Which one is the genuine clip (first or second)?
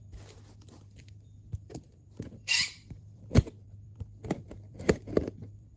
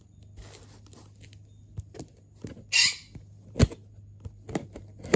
second